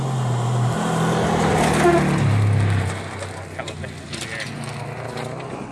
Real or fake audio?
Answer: real